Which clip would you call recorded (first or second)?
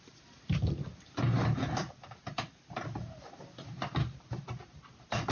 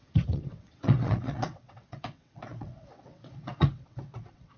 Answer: first